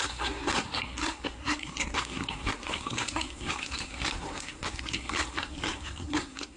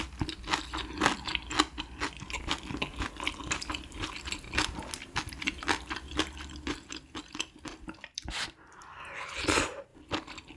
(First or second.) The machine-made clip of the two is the first